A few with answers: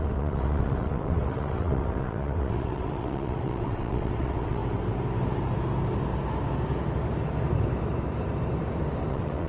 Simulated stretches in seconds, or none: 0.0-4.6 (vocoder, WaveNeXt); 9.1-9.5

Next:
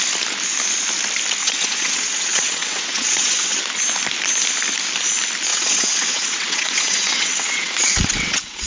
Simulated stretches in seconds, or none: 1.4-3.6 (vocoder, WaveNeXt); 5.5-8.7

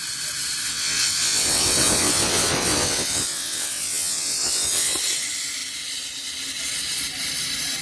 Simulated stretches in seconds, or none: 0.7-4.9 (vocoder, WaveNeXt)

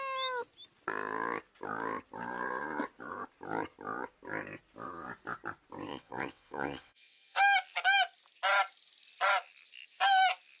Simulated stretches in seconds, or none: 5.9-7.4 (vocoder, WaveNeXt)

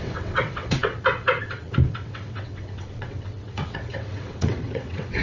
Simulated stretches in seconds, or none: 0.0-5.2 (vocoder, WaveNeXt)

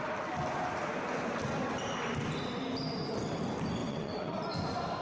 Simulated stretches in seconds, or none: 3.8-4.5 (vocoder, WaveNeXt)

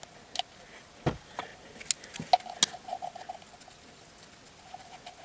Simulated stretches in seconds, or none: none

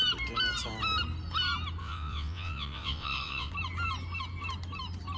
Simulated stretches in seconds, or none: 1.8-3.5 (vocoder, WaveNeXt)